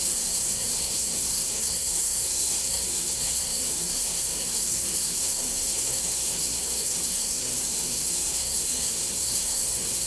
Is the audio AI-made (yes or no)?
yes